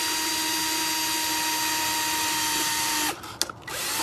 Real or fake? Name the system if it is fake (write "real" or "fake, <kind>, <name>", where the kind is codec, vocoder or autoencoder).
real